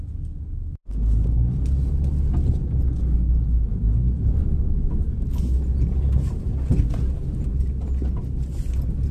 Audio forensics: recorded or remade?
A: recorded